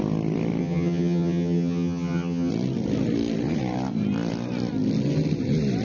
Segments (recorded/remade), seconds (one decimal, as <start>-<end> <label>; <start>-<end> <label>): 0.0-0.6 recorded; 0.6-2.5 remade; 2.5-5.8 recorded